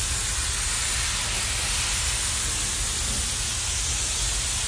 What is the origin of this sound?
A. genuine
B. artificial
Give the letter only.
A